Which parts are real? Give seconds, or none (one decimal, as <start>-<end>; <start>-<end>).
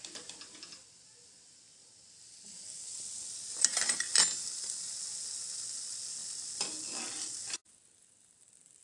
0.0-8.8